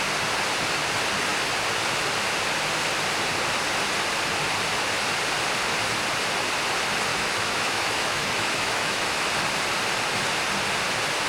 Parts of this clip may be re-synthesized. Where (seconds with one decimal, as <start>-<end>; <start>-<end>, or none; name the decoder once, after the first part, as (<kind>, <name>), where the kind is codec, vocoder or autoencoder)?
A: 7.1-9.3 (autoencoder, DAC-VAE)

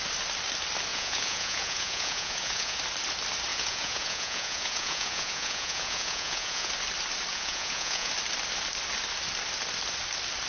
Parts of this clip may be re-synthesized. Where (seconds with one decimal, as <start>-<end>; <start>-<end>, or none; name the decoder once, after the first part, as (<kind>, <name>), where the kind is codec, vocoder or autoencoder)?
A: 0.9-2.8 (vocoder, Vocos); 3.5-6.7; 7.3-8.1

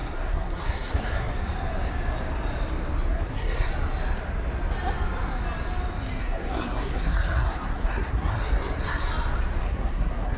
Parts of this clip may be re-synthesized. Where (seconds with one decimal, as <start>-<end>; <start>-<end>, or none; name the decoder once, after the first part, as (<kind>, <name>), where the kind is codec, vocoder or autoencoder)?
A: 0.0-1.3 (codec, SNAC); 3.1-3.7; 6.2-9.1; 9.6-10.4

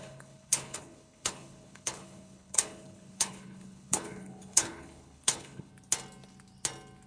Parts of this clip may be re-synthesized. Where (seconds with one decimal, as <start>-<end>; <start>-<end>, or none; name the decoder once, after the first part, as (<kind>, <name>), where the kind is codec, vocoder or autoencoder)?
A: 0.0-5.7 (codec, HILCodec)

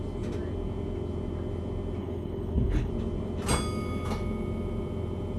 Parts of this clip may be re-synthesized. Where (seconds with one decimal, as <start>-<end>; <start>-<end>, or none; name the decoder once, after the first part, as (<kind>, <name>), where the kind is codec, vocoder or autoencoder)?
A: 2.0-2.9 (codec, HILCodec)

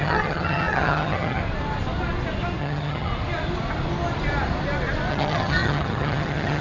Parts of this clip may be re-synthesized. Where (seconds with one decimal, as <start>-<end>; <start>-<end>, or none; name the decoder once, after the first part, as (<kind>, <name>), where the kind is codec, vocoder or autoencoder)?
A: 0.0-1.4 (vocoder, HiFi-GAN); 2.6-3.1; 5.1-6.6

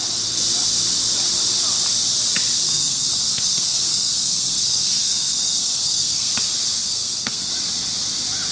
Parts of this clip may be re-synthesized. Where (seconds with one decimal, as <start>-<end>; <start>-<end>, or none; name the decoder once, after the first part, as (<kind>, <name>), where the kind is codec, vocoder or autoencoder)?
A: 2.6-6.3 (codec, SNAC); 6.8-7.5